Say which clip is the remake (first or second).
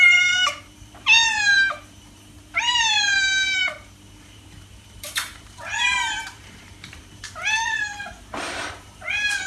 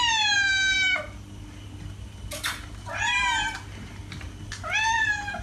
first